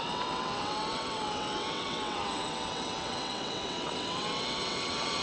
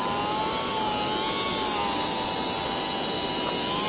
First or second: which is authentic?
second